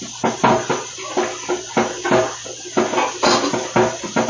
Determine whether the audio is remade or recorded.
recorded